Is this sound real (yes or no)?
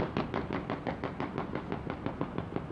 yes